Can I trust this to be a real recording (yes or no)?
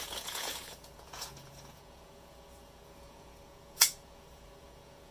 no